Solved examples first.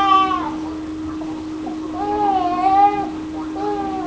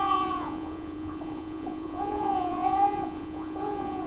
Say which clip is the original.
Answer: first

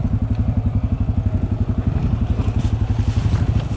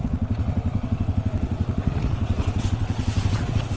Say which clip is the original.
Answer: first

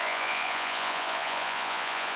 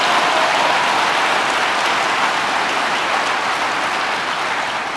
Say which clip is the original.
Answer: second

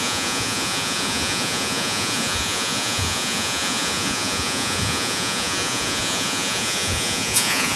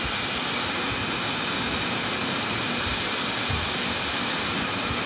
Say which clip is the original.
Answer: second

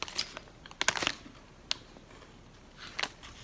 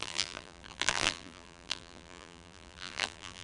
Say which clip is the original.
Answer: first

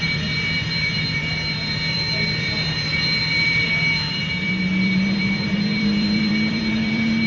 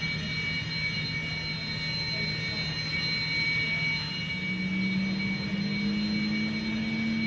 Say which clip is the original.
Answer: second